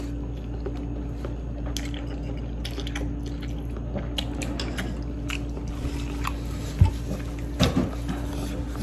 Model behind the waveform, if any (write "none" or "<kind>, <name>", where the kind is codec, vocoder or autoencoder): none